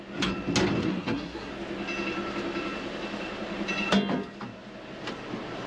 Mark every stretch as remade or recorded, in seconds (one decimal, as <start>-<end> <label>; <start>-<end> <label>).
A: 0.0-0.8 recorded; 0.8-1.5 remade; 1.5-5.7 recorded